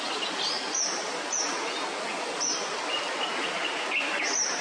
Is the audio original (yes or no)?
yes